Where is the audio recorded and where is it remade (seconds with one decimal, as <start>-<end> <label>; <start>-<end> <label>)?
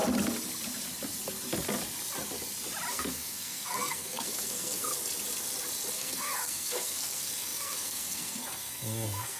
0.0-2.9 recorded; 2.9-4.9 remade; 4.9-5.9 recorded; 5.9-9.4 remade